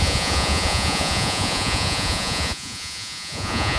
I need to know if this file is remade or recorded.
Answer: remade